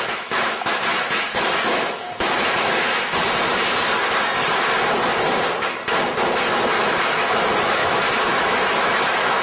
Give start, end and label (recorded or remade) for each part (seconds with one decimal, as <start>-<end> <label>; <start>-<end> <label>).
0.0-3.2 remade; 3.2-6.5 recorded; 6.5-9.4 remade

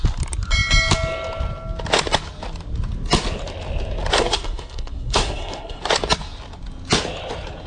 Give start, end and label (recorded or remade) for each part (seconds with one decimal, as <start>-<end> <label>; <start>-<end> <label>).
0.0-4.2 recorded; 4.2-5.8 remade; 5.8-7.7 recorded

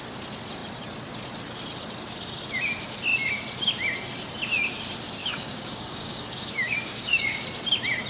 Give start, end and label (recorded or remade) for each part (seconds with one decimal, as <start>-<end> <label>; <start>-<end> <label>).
0.0-5.2 recorded; 5.2-7.4 remade; 7.4-8.1 recorded

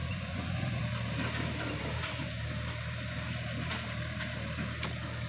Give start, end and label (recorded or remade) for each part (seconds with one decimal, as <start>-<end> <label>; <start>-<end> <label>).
0.0-0.8 remade; 0.8-5.3 recorded